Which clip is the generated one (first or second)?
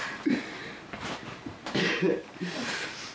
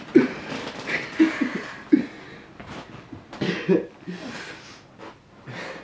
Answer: first